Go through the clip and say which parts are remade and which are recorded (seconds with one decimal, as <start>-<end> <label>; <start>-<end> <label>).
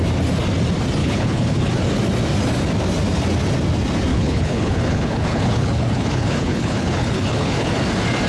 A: 0.0-1.0 recorded; 1.0-1.7 remade; 1.7-4.1 recorded; 4.1-7.7 remade; 7.7-8.3 recorded